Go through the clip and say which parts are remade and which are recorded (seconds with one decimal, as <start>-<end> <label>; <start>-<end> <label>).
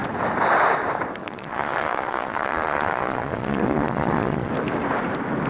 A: 0.0-1.2 recorded; 1.2-4.5 remade; 4.5-5.5 recorded